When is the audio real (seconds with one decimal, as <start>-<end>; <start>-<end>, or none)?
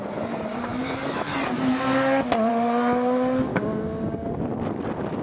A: 0.0-3.5; 4.4-5.2